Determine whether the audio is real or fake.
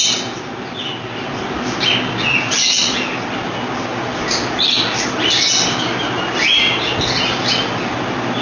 real